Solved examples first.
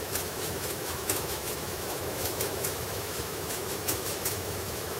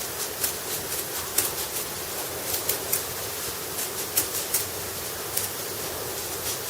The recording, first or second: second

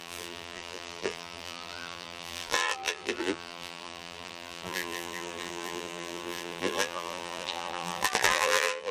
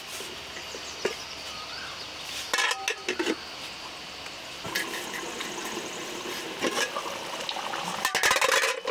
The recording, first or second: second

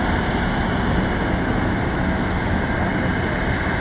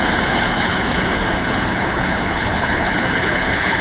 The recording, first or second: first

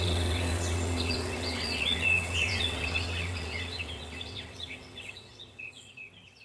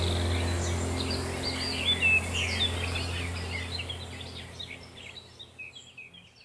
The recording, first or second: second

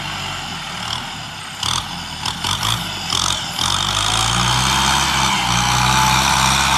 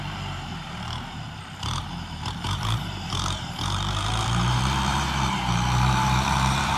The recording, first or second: first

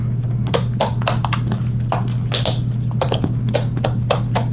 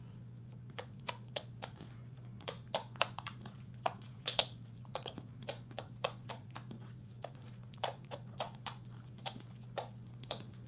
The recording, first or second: first